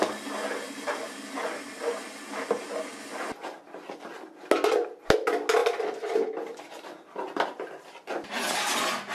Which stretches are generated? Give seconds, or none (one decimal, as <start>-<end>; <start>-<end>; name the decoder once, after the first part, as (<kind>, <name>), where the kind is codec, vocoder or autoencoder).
5.6-8.1 (vocoder, BigVGAN v2)